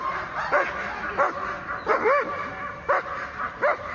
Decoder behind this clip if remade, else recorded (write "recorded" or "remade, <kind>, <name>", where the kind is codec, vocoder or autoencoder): recorded